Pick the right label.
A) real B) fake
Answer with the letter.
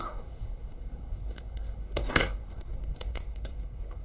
B